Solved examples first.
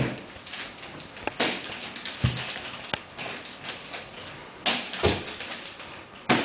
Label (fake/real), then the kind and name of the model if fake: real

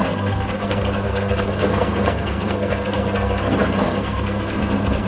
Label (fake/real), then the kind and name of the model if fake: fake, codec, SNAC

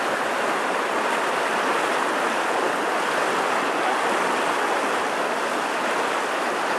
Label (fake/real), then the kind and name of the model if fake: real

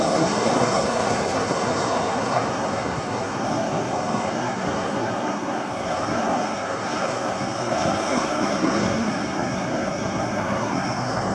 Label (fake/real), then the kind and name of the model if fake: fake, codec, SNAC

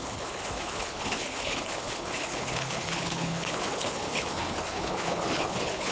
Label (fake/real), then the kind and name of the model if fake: fake, codec, HILCodec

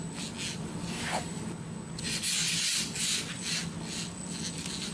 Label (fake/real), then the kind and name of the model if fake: real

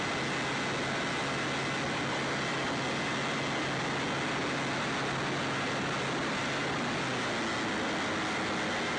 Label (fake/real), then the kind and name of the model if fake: real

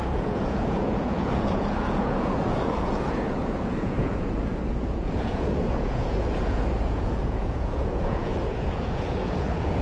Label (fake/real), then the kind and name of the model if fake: fake, vocoder, Vocos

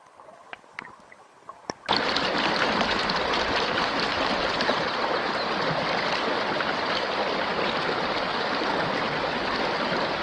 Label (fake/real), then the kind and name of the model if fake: fake, vocoder, BigVGAN v2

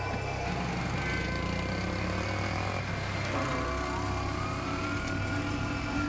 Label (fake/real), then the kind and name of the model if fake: real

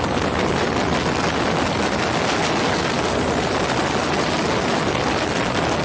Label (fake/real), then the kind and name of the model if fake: real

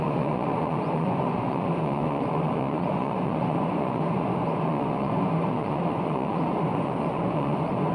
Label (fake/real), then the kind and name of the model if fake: fake, vocoder, Vocos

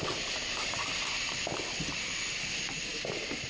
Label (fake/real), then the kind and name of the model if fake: real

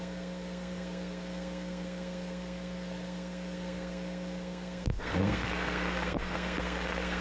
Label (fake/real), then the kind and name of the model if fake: fake, codec, SNAC